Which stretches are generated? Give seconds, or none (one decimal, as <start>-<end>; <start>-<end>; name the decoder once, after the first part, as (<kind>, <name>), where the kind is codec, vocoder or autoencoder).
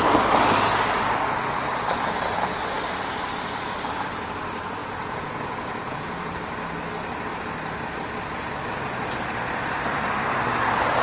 4.8-6.3 (vocoder, Vocos)